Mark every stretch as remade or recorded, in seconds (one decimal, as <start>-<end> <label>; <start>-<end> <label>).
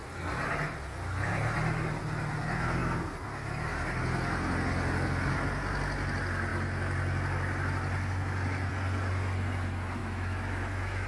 0.0-10.0 recorded; 10.0-11.1 remade